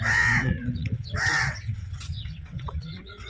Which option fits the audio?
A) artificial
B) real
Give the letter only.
A